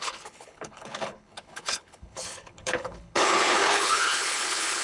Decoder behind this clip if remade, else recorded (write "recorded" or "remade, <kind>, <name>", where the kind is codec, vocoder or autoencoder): remade, codec, HILCodec